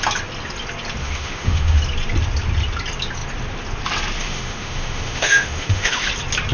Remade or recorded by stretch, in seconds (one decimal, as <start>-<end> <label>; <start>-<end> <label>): 0.0-1.0 recorded; 1.0-1.8 remade; 1.8-4.2 recorded; 4.2-6.1 remade; 6.1-6.5 recorded